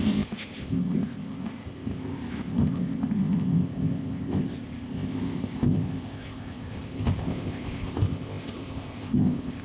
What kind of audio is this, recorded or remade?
remade